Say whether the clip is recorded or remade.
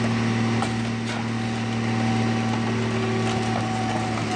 recorded